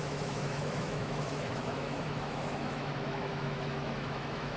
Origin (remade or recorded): remade